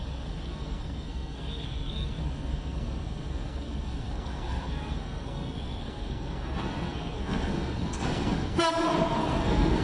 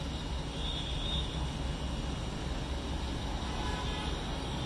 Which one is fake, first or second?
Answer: first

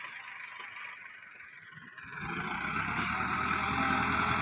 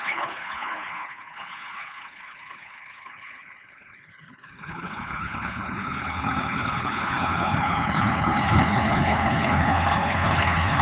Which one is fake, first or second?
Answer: second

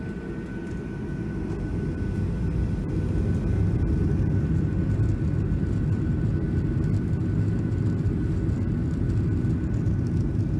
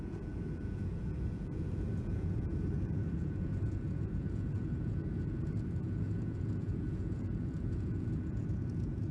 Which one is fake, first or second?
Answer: second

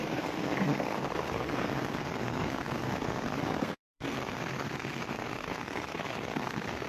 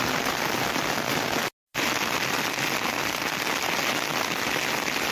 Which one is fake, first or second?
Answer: first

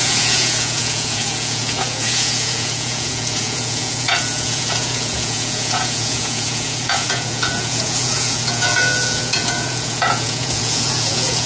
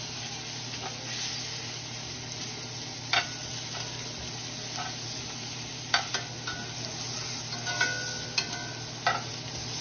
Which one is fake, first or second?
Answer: first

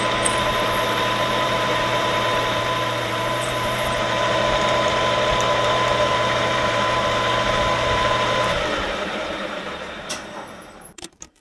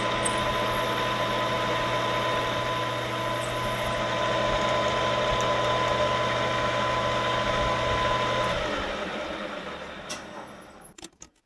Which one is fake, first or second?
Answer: first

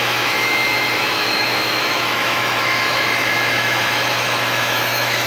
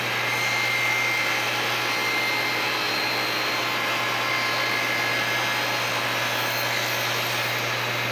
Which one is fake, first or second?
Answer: first